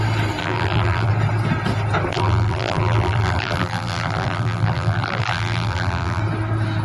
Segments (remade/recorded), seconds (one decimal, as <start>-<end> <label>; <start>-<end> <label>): 0.0-0.4 recorded; 0.4-1.1 remade; 1.1-2.1 recorded; 2.1-6.2 remade; 6.2-6.8 recorded